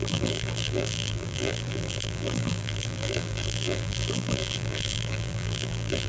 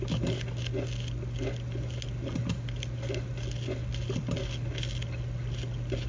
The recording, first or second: second